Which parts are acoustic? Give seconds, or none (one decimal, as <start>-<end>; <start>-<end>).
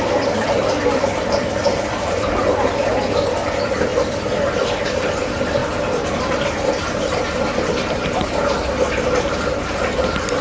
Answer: 3.9-4.6; 5.6-8.1